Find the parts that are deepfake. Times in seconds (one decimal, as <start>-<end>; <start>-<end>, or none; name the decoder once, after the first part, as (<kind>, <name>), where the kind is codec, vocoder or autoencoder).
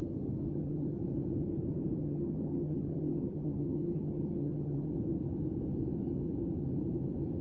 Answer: 0.5-1.0 (vocoder, HiFi-GAN); 2.0-4.9